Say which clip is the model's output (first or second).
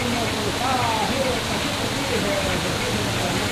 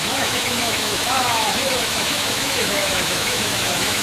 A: second